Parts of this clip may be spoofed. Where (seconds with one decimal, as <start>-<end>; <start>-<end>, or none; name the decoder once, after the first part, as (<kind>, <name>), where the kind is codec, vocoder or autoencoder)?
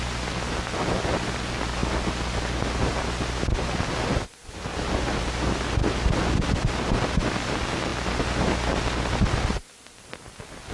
none